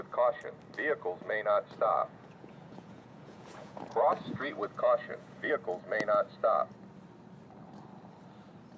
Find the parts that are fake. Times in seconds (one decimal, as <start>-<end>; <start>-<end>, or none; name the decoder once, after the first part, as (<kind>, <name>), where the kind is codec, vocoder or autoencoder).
2.0-5.5 (vocoder, Vocos)